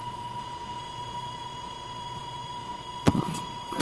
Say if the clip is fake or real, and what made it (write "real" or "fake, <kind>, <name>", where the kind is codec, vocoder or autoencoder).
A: fake, vocoder, Vocos